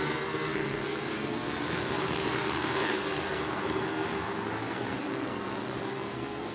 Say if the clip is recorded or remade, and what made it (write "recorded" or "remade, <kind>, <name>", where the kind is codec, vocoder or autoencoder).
remade, codec, SNAC